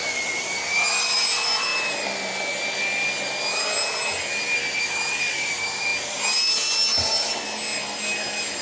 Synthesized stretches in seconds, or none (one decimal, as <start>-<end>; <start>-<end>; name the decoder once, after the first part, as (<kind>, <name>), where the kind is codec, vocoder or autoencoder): 0.0-1.7 (vocoder, BigVGAN v2); 4.8-5.9